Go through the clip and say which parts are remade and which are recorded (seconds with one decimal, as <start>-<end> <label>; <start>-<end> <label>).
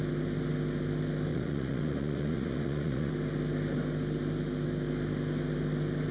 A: 0.0-1.3 recorded; 1.3-3.1 remade; 3.1-6.1 recorded